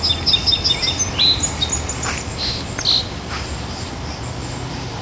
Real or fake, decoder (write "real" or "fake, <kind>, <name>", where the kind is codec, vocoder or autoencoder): real